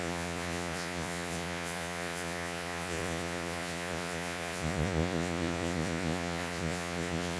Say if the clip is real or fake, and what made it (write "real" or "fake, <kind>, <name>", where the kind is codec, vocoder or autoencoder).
fake, vocoder, Vocos